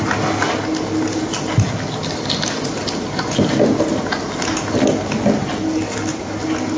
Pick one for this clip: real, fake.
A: real